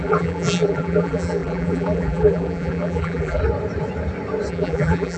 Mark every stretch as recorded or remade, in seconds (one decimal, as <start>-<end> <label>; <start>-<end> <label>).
0.0-3.4 remade; 3.4-4.5 recorded; 4.5-5.2 remade